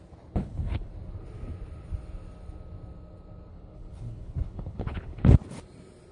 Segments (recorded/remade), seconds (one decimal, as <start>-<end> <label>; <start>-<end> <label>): 0.0-0.4 recorded; 0.4-0.9 remade; 0.9-3.5 recorded; 3.5-5.2 remade; 5.2-6.1 recorded